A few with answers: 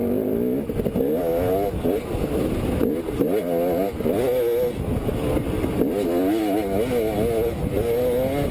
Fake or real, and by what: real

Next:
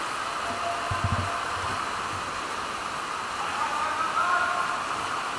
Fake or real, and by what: real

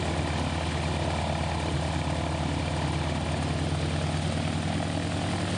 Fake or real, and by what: real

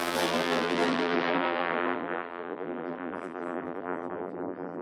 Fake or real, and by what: fake, vocoder, BigVGAN v2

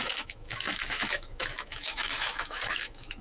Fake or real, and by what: fake, autoencoder, DAC-VAE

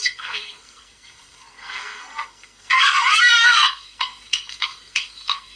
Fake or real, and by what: fake, codec, SNAC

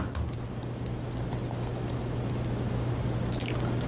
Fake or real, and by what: real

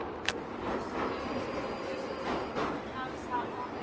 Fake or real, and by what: real